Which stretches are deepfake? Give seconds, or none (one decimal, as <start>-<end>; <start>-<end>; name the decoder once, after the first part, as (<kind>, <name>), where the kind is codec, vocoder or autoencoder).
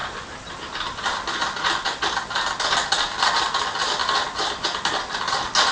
none